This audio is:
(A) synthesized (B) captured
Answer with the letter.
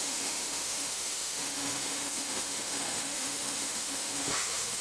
A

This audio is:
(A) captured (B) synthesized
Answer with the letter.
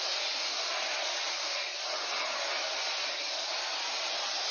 A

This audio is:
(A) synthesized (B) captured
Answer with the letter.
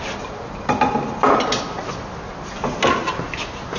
B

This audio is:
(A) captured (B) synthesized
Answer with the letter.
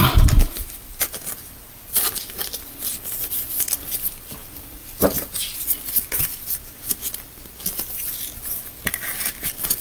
A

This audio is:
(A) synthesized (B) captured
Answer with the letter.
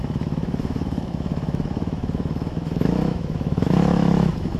A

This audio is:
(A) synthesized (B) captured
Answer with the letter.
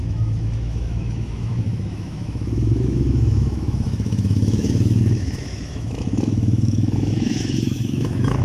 A